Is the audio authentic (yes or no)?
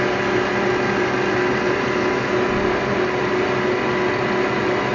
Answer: yes